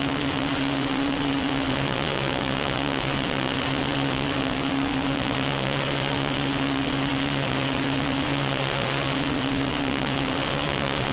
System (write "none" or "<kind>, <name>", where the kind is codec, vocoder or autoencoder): vocoder, WaveNeXt